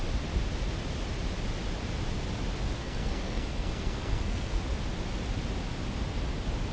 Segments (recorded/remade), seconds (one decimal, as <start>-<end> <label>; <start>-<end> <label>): 0.0-2.8 recorded; 2.8-4.6 remade; 4.6-6.7 recorded